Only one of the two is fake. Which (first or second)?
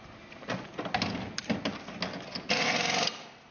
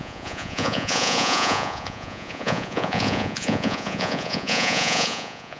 second